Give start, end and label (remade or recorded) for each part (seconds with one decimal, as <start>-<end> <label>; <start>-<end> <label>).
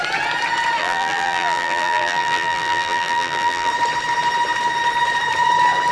0.0-0.8 recorded; 0.8-3.7 remade; 3.7-5.9 recorded